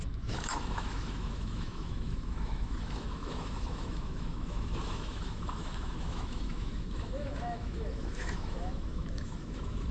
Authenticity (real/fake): fake